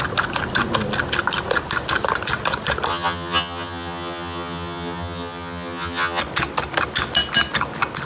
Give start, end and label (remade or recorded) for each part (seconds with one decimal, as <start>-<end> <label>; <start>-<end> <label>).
0.0-2.9 recorded; 2.9-6.2 remade; 6.2-8.1 recorded